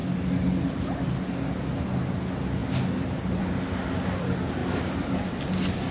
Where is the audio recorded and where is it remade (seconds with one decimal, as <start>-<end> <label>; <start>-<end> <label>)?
0.0-5.9 recorded